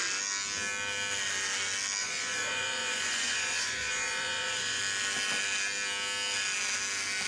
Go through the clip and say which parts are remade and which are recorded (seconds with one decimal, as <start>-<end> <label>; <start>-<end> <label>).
0.0-2.0 recorded; 2.0-4.8 remade; 4.8-7.3 recorded